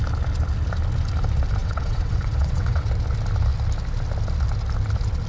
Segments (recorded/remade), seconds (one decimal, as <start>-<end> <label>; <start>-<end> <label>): 0.0-1.6 recorded; 1.6-2.9 remade; 2.9-5.3 recorded